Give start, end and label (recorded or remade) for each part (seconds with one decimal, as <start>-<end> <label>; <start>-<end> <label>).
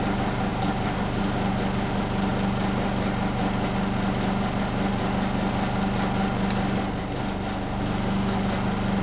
0.0-0.5 recorded; 0.5-1.2 remade; 1.2-9.0 recorded